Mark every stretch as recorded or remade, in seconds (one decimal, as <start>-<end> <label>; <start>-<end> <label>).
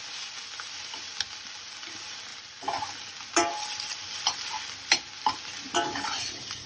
0.0-6.7 recorded